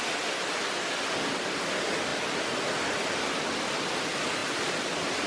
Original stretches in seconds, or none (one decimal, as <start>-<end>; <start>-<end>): 0.0-5.3